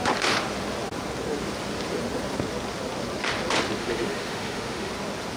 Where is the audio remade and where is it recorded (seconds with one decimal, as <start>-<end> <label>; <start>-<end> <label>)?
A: 0.0-3.8 recorded; 3.8-4.9 remade; 4.9-5.4 recorded